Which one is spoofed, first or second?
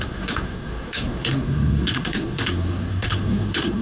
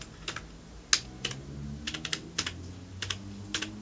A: first